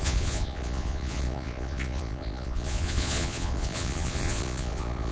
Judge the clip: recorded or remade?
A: remade